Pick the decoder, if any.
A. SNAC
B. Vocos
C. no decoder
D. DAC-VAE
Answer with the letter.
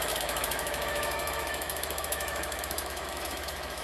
D